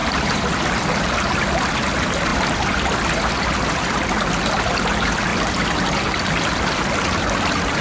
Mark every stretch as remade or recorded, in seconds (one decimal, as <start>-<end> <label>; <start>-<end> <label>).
0.0-7.8 recorded

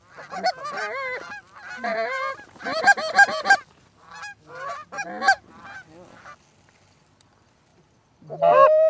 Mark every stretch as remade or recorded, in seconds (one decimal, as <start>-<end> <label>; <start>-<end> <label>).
0.0-7.7 recorded; 7.7-8.9 remade

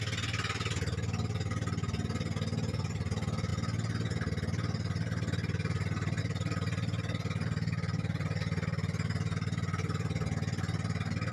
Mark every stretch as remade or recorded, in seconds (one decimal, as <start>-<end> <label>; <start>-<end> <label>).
0.0-11.3 recorded

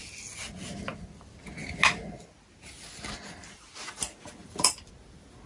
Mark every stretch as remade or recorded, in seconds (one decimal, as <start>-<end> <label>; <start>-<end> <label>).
0.0-4.4 recorded; 4.4-4.9 remade; 4.9-5.5 recorded